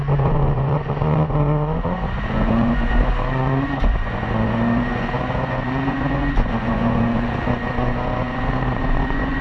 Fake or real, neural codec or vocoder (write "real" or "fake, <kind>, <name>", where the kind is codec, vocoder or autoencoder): fake, vocoder, Vocos